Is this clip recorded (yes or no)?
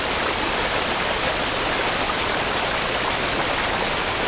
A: yes